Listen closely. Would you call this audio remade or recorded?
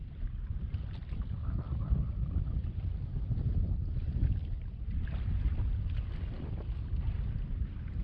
recorded